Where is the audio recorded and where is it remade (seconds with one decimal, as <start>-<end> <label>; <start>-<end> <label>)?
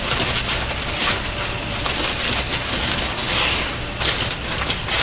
0.0-5.0 recorded